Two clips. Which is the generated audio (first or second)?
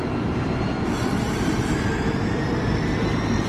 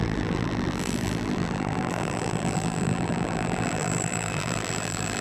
second